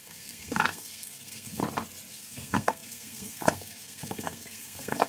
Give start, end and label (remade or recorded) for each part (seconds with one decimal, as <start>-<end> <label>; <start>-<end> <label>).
0.0-1.6 remade; 1.6-2.1 recorded; 2.1-5.1 remade